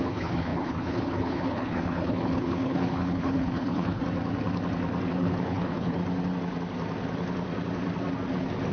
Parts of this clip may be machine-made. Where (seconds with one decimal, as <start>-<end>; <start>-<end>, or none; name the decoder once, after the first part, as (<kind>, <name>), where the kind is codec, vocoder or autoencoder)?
0.0-4.0 (codec, HILCodec); 5.1-6.0